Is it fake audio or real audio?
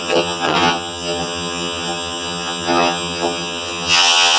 fake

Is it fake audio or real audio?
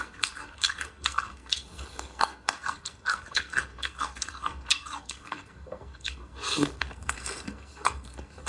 fake